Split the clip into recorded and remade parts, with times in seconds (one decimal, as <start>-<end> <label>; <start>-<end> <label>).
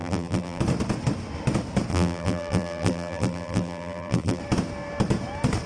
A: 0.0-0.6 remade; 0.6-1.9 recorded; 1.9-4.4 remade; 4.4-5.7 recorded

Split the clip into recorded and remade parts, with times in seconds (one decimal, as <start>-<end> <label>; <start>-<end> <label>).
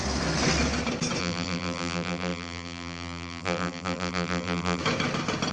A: 0.0-1.2 recorded; 1.2-4.8 remade; 4.8-5.5 recorded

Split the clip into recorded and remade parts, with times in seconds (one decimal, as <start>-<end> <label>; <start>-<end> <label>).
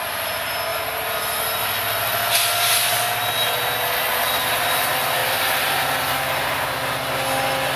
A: 0.0-5.2 recorded; 5.2-6.1 remade; 6.1-7.8 recorded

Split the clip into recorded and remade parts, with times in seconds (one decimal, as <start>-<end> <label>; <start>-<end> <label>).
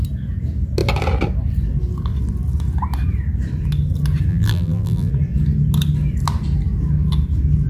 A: 0.0-4.3 recorded; 4.3-5.1 remade; 5.1-7.7 recorded